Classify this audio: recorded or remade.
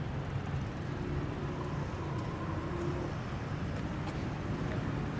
recorded